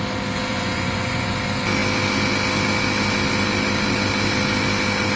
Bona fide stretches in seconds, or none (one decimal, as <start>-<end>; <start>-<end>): 0.0-0.5; 1.3-5.2